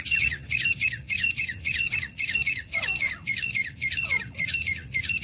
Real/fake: fake